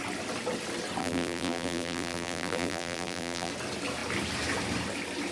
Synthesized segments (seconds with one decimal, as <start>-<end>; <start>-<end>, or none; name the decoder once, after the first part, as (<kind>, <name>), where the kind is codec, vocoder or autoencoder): 1.0-3.5 (vocoder, BigVGAN v2)